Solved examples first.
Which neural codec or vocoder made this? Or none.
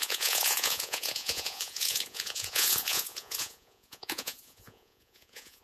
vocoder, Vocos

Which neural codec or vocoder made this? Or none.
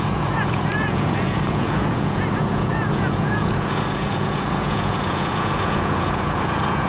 vocoder, Vocos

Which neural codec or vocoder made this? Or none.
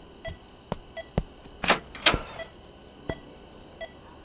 none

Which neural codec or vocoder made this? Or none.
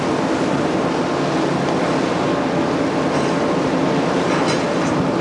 none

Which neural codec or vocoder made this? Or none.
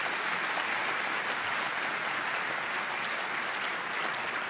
none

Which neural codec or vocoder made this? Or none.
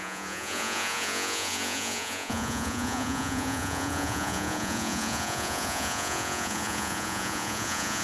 vocoder, Vocos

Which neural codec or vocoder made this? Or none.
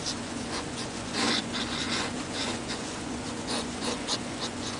vocoder, Vocos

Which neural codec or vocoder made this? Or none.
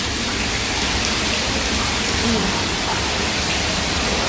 none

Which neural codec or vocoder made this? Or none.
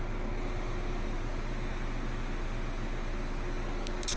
none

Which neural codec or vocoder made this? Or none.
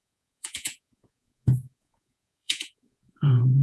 vocoder, Vocos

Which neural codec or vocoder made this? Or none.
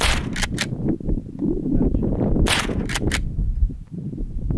none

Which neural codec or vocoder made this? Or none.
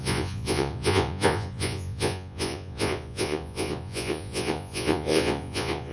vocoder, Vocos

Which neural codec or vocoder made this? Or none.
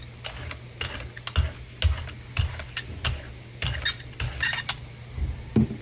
none